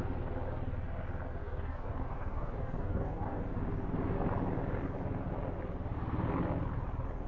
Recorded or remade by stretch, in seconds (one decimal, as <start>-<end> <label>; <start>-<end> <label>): 0.0-1.4 recorded; 1.4-3.4 remade; 3.4-7.3 recorded